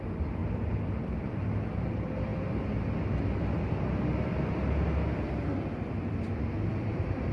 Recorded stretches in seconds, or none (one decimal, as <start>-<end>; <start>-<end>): 2.3-5.9